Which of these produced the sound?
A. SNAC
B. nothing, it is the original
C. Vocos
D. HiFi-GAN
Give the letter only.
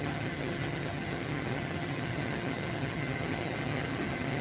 D